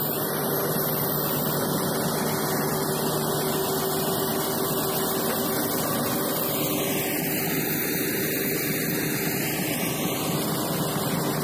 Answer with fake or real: real